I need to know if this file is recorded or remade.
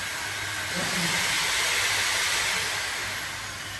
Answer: recorded